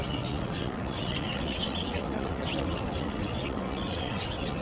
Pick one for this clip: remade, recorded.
remade